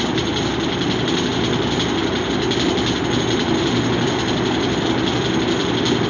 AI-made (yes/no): no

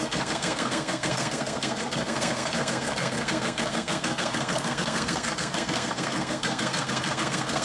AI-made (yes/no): yes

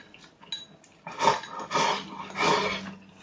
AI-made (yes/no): no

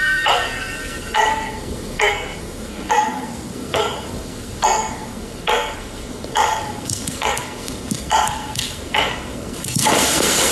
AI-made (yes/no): yes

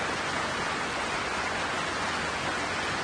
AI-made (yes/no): yes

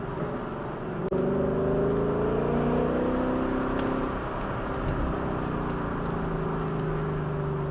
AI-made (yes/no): no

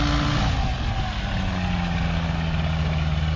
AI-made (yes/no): no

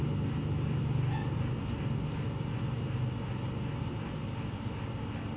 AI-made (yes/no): no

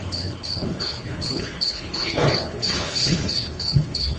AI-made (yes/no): yes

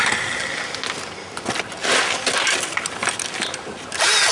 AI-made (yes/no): no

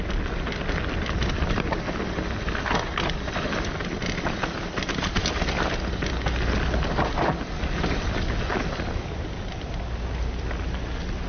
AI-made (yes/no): no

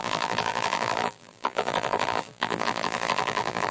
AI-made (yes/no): yes